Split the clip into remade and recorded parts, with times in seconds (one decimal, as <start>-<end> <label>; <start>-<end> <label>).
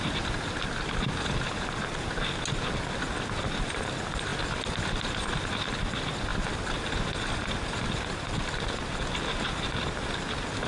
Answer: 0.0-10.7 recorded